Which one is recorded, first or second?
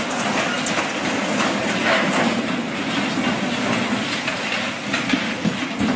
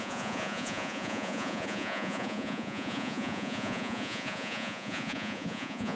first